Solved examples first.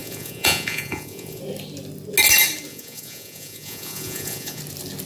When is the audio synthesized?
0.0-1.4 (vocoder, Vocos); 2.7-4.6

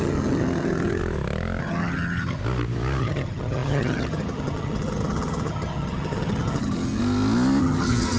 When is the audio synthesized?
0.0-1.0 (vocoder, HiFi-GAN); 1.6-2.4; 3.0-7.0; 7.6-8.2